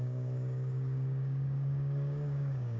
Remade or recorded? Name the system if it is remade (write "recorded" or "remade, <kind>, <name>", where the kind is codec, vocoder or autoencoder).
remade, codec, DAC